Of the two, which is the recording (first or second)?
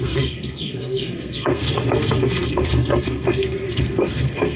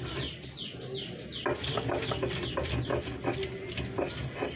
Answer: second